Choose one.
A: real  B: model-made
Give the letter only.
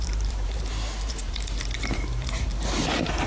B